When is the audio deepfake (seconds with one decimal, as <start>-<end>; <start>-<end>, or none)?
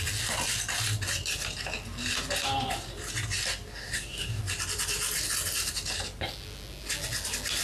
3.7-4.4